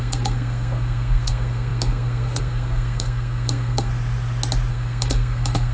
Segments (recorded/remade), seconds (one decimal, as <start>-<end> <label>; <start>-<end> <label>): 0.0-3.9 remade; 3.9-4.7 recorded; 4.7-5.7 remade